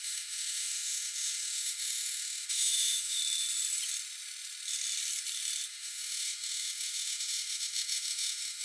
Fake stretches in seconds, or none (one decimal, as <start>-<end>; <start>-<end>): 0.0-3.2; 5.7-8.6